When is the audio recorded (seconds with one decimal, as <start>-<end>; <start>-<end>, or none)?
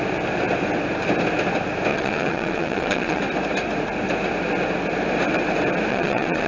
0.0-1.9; 3.2-5.9